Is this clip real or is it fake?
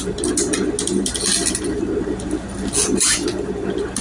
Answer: real